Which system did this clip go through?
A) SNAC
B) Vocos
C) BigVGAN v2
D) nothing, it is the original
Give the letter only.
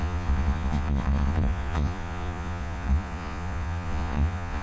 B